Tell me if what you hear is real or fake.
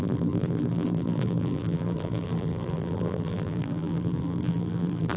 fake